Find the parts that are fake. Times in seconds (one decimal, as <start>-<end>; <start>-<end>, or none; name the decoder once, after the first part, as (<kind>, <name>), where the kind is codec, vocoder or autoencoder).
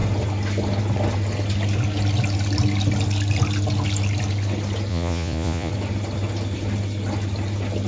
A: 4.9-5.7 (vocoder, Vocos)